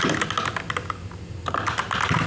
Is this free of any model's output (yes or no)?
yes